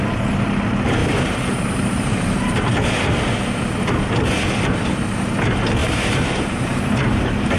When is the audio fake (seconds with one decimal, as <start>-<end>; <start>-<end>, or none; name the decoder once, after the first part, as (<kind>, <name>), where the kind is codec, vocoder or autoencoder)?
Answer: 1.0-2.6 (vocoder, BigVGAN v2); 5.8-6.9